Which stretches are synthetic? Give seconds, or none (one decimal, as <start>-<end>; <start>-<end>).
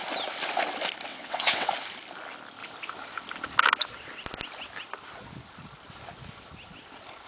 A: 1.1-1.7